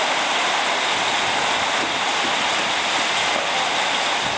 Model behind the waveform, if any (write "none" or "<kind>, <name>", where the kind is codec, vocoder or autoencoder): none